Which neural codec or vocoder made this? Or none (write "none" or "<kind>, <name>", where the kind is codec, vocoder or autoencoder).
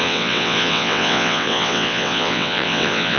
vocoder, WaveNeXt